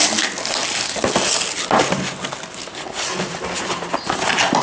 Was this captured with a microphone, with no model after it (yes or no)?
yes